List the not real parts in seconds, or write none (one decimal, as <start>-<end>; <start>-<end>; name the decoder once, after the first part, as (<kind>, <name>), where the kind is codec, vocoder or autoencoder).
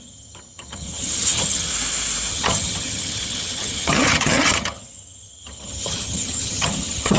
0.0-1.7 (vocoder, HiFi-GAN); 2.3-7.2